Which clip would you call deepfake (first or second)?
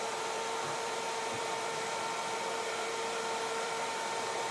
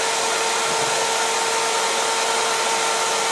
first